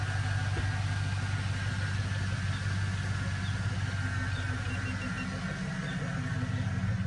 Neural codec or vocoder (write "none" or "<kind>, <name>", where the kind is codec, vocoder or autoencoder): none